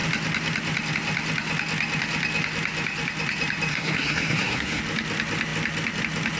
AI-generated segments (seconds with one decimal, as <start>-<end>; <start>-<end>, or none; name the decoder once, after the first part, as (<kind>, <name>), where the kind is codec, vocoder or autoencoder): 3.7-4.8 (codec, SNAC)